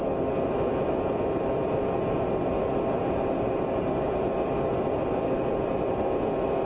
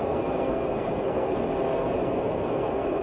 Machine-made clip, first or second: second